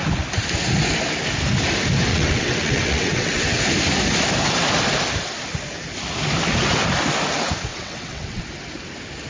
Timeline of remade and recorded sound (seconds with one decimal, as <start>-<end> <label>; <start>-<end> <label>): 0.0-2.1 recorded; 2.1-3.6 remade; 3.6-7.7 recorded; 7.7-8.4 remade; 8.4-9.3 recorded